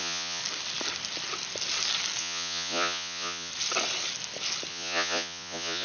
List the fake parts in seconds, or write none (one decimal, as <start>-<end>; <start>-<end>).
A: 0.0-0.4; 2.2-3.5; 4.7-5.8